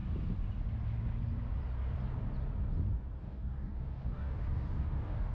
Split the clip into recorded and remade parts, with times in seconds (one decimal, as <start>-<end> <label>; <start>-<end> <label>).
0.0-3.2 recorded; 3.2-5.3 remade